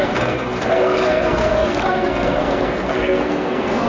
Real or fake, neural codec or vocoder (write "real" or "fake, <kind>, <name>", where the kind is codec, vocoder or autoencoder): fake, codec, SNAC